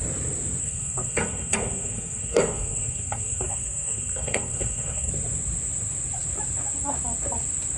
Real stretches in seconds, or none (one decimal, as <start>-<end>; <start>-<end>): 0.0-0.6; 5.1-7.8